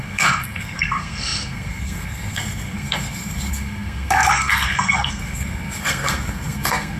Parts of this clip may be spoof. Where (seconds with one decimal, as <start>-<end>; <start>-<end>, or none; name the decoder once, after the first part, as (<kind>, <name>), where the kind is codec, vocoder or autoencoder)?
0.0-7.0 (codec, SNAC)